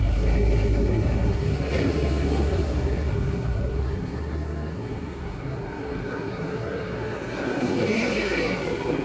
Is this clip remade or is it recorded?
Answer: remade